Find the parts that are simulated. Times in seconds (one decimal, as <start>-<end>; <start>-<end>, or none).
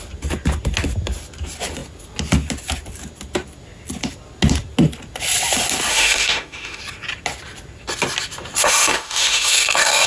5.9-6.8; 8.6-10.1